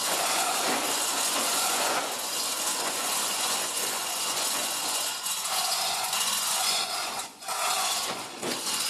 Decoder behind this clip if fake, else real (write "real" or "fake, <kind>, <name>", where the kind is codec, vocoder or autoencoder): fake, vocoder, Vocos